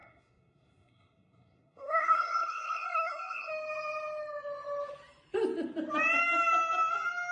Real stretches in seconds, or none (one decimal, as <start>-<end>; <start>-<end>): 3.5-7.3